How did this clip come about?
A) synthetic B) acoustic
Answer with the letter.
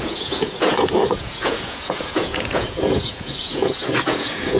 A